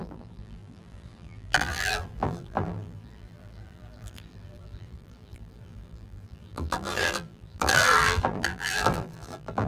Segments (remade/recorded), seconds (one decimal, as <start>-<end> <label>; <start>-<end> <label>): 0.0-9.7 remade